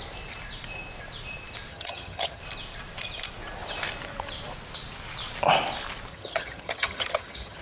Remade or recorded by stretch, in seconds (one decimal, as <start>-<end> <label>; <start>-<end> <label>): 0.0-1.7 recorded; 1.7-2.4 remade; 2.4-6.1 recorded; 6.1-7.6 remade